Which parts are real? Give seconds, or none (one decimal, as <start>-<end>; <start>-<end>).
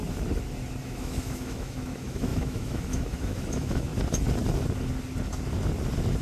0.0-0.8; 3.9-6.2